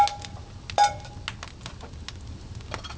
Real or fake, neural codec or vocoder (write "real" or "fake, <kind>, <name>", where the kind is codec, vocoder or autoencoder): real